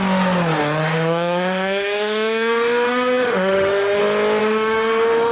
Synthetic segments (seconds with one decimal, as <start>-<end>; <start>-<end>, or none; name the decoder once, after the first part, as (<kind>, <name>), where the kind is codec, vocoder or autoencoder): 0.8-4.0 (autoencoder, DAC-VAE); 4.4-5.3